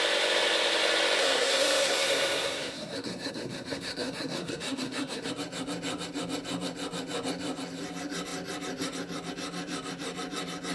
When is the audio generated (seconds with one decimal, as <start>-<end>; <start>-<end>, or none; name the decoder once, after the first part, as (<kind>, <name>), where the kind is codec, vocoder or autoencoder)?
1.2-5.3 (codec, SNAC)